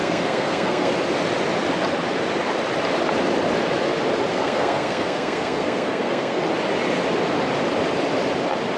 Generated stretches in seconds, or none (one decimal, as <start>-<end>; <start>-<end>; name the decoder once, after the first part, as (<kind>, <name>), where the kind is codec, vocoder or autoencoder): 0.0-0.9 (codec, SNAC); 4.3-6.4